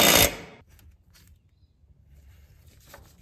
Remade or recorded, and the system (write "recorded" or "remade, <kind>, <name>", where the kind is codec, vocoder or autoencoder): recorded